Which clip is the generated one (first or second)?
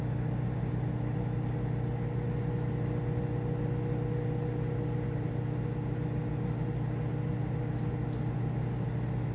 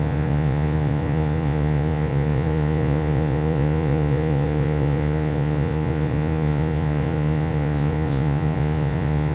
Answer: second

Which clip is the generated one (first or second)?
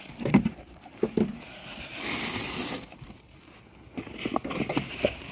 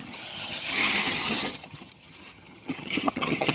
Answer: second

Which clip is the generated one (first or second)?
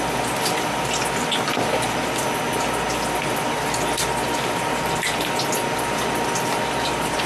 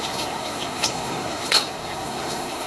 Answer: second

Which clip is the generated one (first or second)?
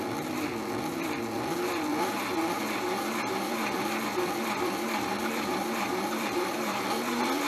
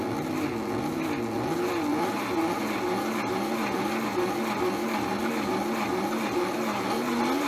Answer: first